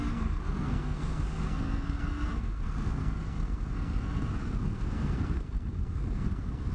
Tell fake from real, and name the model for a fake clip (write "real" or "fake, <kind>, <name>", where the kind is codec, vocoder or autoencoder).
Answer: fake, codec, SNAC